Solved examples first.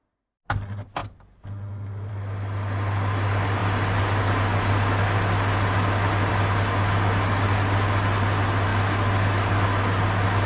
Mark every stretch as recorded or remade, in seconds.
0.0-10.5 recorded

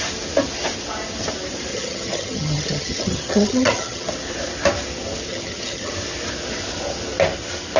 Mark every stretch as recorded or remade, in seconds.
0.0-1.7 recorded; 1.7-4.1 remade; 4.1-5.3 recorded; 5.3-5.9 remade; 5.9-7.8 recorded

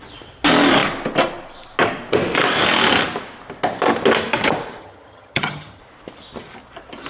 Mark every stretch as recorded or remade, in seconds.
0.0-4.8 recorded; 4.8-5.8 remade; 5.8-7.1 recorded

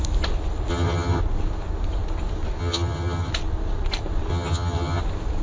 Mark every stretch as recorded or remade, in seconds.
0.0-0.7 recorded; 0.7-1.2 remade; 1.2-2.6 recorded; 2.6-3.3 remade; 3.3-4.3 recorded; 4.3-5.0 remade; 5.0-5.4 recorded

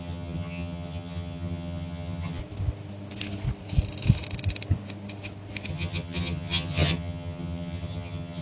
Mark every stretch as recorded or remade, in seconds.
0.0-2.4 remade; 2.4-5.7 recorded; 5.7-8.4 remade

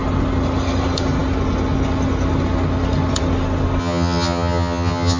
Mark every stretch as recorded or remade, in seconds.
0.0-3.8 recorded; 3.8-5.2 remade

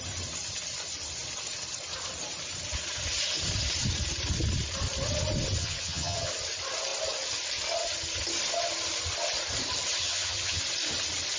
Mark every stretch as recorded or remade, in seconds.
0.0-5.6 recorded; 5.6-6.3 remade; 6.3-10.0 recorded; 10.0-10.6 remade; 10.6-11.4 recorded

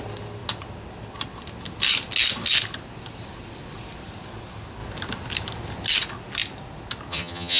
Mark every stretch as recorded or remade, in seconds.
0.0-7.1 recorded; 7.1-7.6 remade